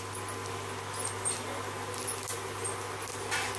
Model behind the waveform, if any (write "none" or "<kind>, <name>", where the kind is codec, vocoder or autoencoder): none